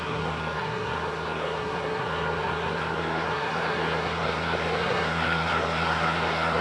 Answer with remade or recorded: remade